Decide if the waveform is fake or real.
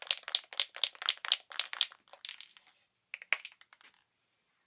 real